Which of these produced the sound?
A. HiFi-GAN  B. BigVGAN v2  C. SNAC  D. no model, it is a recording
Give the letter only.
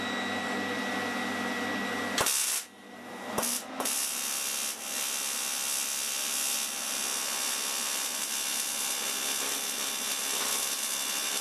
D